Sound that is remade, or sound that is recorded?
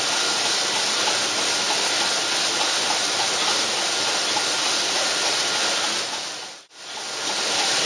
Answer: recorded